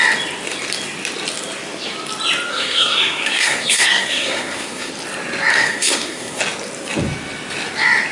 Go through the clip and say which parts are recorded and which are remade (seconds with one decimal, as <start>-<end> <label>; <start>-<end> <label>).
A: 0.0-2.5 recorded; 2.5-4.9 remade; 4.9-5.5 recorded; 5.5-6.4 remade; 6.4-8.1 recorded